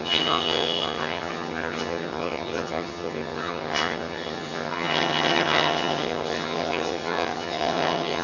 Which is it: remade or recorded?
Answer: remade